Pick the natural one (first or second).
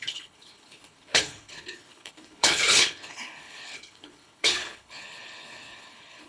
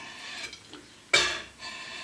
second